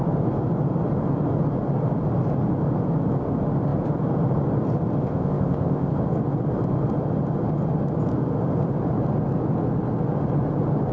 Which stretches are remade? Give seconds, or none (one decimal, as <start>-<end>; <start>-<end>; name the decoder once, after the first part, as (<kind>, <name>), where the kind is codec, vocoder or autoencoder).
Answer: 5.0-5.9 (codec, ZipCodec)